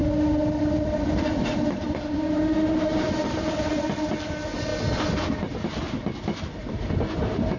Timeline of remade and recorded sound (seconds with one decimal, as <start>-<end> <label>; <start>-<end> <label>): 0.0-0.6 recorded; 0.6-4.7 remade; 4.7-6.4 recorded; 6.4-7.6 remade